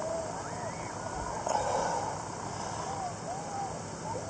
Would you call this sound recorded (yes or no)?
yes